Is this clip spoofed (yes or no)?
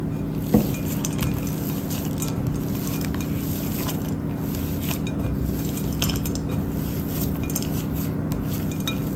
no